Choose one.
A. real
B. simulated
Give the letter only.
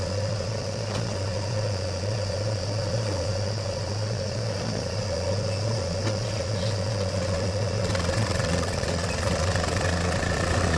B